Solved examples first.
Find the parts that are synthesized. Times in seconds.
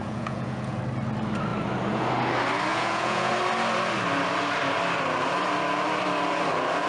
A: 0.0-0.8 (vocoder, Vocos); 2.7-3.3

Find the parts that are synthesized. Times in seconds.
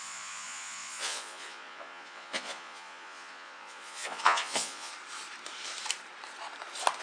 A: 0.0-4.9 (vocoder, Vocos)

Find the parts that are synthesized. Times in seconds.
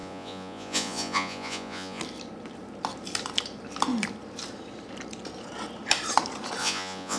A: 0.0-2.0 (vocoder, Vocos); 6.6-7.2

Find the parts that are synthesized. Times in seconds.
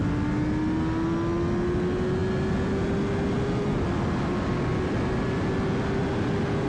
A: none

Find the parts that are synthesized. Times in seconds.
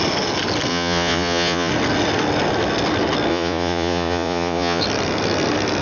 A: 0.7-1.7 (vocoder, Vocos); 3.3-4.8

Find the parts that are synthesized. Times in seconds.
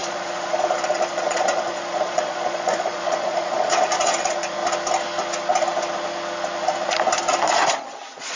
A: 0.0-4.6 (vocoder, Vocos); 7.7-8.4